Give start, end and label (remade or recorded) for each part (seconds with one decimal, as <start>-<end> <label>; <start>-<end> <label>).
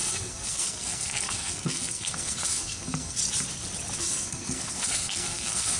0.0-3.2 remade; 3.2-4.0 recorded; 4.0-5.8 remade